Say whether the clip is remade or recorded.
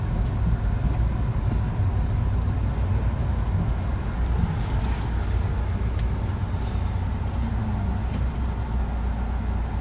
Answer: recorded